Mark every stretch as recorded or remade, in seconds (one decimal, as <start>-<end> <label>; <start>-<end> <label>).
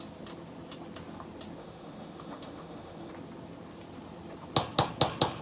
0.0-1.6 recorded; 1.6-3.1 remade; 3.1-5.4 recorded